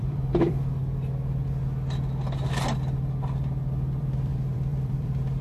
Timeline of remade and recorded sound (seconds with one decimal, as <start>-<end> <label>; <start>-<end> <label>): 0.0-0.8 remade; 0.8-4.0 recorded; 4.0-5.4 remade

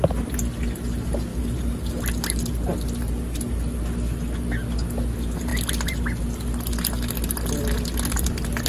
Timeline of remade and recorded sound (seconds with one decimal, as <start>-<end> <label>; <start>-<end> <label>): 0.0-1.3 recorded; 1.3-2.0 remade; 2.0-8.7 recorded

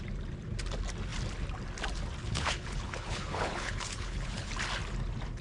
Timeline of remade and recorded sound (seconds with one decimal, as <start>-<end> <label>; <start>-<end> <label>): 0.0-2.2 recorded; 2.2-4.5 remade; 4.5-5.4 recorded

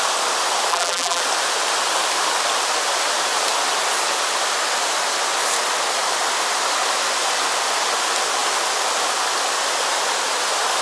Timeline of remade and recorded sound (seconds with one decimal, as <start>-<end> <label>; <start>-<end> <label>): 0.0-0.7 recorded; 0.7-1.2 remade; 1.2-10.8 recorded

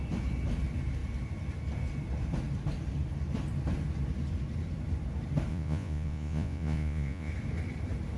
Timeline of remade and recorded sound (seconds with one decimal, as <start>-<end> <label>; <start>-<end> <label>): 0.0-5.5 recorded; 5.5-7.3 remade; 7.3-8.2 recorded

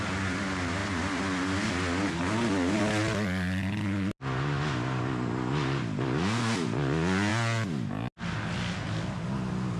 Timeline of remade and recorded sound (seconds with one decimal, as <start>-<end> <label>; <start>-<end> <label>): 0.0-9.8 recorded